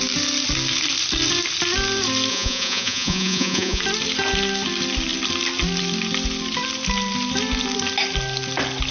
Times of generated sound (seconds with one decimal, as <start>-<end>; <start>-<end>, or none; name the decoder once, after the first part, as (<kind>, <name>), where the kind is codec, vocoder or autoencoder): 2.3-3.8 (vocoder, Vocos)